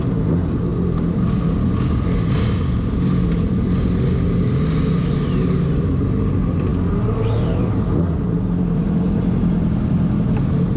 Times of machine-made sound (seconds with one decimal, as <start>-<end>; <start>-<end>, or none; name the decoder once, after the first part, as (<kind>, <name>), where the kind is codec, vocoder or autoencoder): none